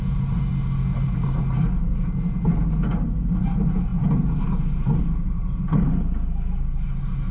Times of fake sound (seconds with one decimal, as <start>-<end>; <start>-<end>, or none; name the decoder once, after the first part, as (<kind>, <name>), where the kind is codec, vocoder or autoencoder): none